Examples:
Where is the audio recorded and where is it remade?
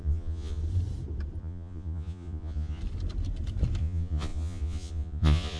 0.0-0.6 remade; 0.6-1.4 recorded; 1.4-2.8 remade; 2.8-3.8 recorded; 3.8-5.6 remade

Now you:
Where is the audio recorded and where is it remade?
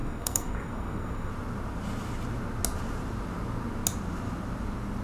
0.0-1.3 remade; 1.3-5.0 recorded